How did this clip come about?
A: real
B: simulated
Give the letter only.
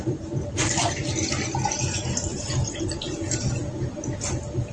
A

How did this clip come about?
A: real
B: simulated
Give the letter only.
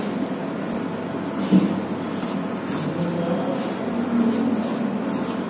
A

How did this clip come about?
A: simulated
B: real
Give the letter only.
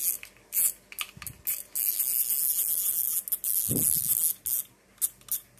B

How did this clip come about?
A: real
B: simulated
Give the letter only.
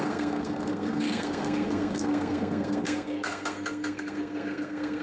B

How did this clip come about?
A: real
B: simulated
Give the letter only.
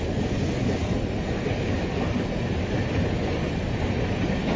A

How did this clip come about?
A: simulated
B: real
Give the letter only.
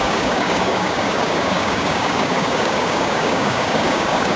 A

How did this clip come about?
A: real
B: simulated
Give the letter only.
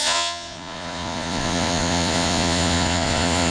B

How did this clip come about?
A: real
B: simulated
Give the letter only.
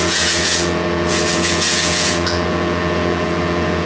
B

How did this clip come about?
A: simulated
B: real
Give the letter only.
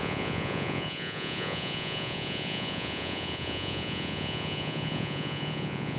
A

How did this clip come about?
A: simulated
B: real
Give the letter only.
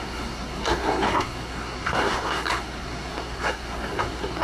A